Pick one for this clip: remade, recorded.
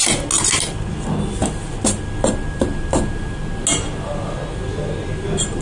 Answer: recorded